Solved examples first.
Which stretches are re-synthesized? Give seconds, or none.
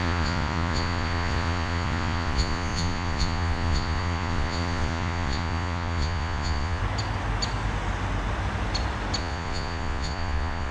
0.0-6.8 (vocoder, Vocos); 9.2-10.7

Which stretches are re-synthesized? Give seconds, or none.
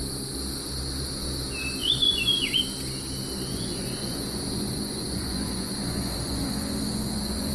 1.8-2.6 (vocoder, Vocos); 3.5-7.5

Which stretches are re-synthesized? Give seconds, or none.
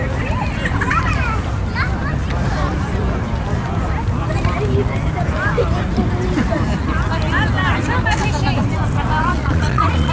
9.2-10.1 (vocoder, Vocos)